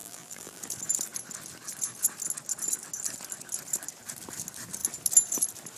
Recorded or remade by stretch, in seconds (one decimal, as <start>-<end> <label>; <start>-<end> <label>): 0.0-0.6 remade; 0.6-5.8 recorded